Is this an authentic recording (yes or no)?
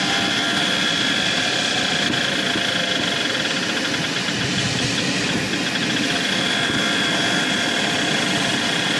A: yes